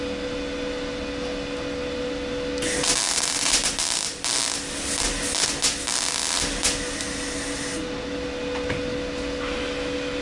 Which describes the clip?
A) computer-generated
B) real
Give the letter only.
B